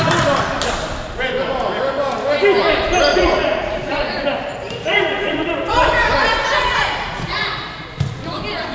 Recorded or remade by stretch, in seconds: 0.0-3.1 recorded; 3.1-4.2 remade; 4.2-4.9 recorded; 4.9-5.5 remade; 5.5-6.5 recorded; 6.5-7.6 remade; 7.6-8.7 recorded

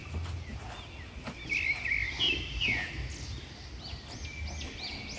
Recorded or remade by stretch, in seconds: 0.0-5.2 recorded

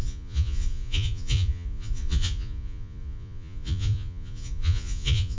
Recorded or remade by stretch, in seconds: 0.0-5.4 remade

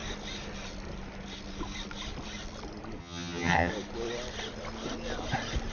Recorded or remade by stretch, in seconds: 0.0-3.0 recorded; 3.0-3.7 remade; 3.7-5.7 recorded

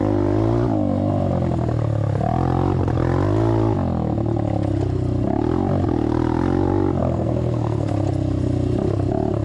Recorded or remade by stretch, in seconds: 0.0-7.0 recorded; 7.0-7.9 remade; 7.9-9.4 recorded

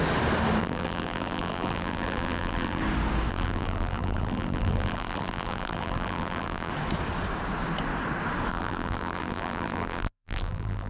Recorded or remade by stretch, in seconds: 0.0-0.6 recorded; 0.6-2.8 remade; 2.8-3.3 recorded; 3.3-6.7 remade; 6.7-8.5 recorded; 8.5-10.9 remade

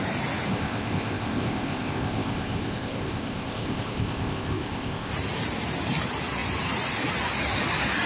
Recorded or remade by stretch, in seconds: 0.0-0.5 recorded; 0.5-5.1 remade; 5.1-8.1 recorded

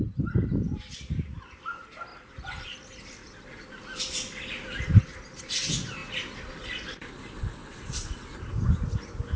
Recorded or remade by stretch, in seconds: 0.0-2.1 recorded; 2.1-2.8 remade; 2.8-9.4 recorded